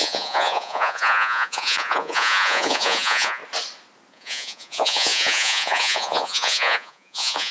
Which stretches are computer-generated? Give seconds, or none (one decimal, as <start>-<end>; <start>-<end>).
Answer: 0.0-3.4; 4.1-7.5